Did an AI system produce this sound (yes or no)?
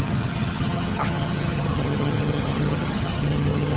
yes